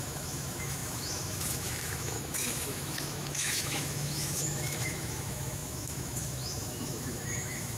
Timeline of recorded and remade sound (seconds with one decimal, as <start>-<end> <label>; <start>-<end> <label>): 0.0-7.8 remade